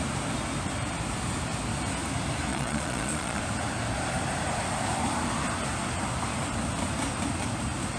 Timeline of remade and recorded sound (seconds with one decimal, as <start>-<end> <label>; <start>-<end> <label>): 0.0-2.5 recorded; 2.5-3.4 remade; 3.4-8.0 recorded